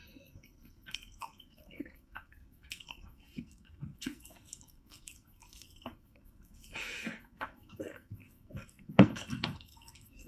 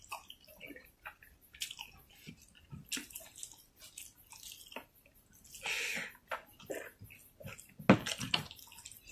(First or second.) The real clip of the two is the second